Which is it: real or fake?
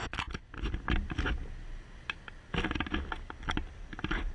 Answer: real